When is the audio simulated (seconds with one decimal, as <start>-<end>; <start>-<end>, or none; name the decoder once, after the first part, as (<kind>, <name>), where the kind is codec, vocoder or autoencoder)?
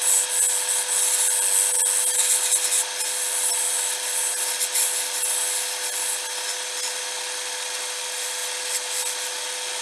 none